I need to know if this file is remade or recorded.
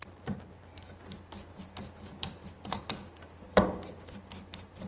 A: recorded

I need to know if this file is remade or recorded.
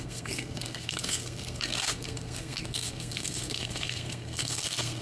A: remade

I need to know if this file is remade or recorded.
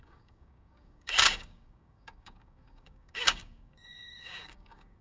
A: remade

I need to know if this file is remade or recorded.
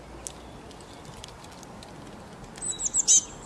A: recorded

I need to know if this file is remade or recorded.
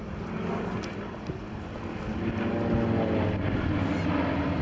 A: recorded